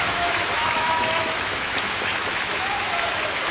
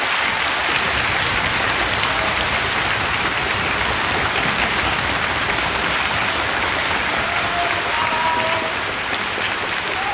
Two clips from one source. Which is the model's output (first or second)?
first